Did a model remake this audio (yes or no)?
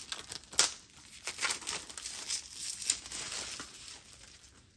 no